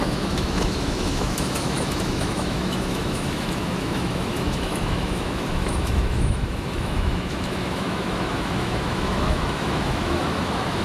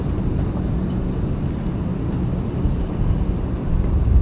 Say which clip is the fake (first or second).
first